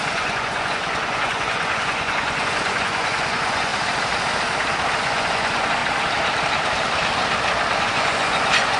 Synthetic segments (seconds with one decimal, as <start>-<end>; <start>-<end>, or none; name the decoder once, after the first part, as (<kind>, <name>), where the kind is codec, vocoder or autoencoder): 0.0-3.7 (vocoder, Vocos); 5.0-5.8; 7.8-8.8